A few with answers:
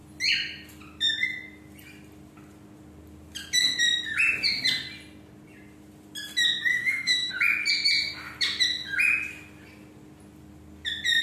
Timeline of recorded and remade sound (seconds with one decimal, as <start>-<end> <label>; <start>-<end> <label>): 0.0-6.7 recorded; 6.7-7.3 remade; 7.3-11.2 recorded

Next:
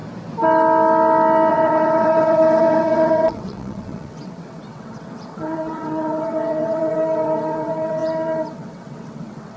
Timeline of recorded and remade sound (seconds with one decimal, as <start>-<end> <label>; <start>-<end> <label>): 0.0-1.5 recorded; 1.5-9.6 remade

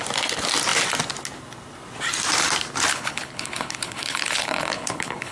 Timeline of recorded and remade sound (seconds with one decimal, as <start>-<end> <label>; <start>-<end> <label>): 0.0-2.9 recorded; 2.9-5.3 remade

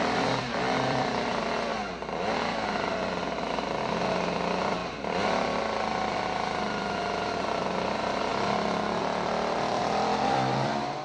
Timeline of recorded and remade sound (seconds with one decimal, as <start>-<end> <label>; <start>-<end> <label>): 0.0-1.7 remade; 1.7-4.1 recorded; 4.1-4.8 remade; 4.8-5.6 recorded; 5.6-8.3 remade; 8.3-9.0 recorded; 9.0-11.0 remade

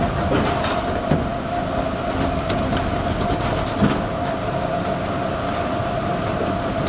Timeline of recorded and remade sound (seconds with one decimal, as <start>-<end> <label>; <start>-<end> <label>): 0.0-6.9 recorded